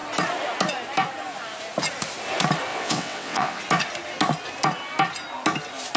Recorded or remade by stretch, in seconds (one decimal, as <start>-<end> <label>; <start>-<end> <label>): 0.0-2.7 recorded; 2.7-3.6 remade; 3.6-6.0 recorded